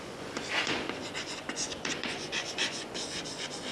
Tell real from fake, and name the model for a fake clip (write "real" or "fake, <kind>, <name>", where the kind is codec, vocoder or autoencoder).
fake, vocoder, Vocos